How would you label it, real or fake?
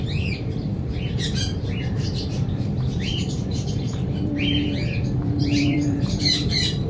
fake